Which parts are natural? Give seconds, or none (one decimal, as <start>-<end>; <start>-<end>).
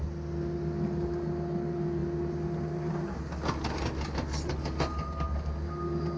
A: 0.0-6.2